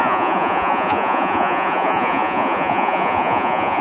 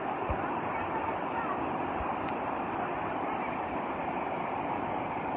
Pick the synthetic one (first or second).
first